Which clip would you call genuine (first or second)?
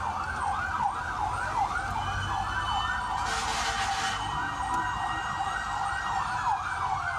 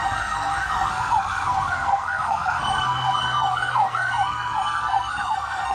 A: first